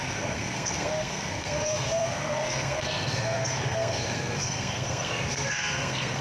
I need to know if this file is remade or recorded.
remade